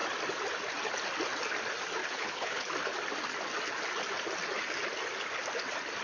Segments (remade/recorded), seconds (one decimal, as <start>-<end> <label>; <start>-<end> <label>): 0.0-2.0 recorded; 2.0-2.7 remade; 2.7-6.0 recorded